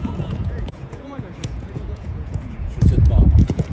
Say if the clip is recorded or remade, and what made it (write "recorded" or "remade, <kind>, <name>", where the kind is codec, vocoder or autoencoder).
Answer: remade, vocoder, Vocos